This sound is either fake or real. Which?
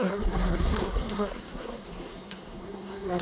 fake